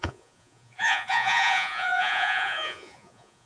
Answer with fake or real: fake